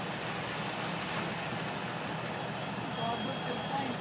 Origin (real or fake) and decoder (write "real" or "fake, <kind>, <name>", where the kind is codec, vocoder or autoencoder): real